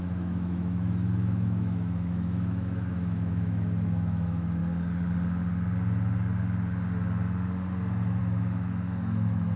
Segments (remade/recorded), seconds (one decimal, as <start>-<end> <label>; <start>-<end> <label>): 0.0-4.6 remade; 4.6-8.2 recorded; 8.2-9.6 remade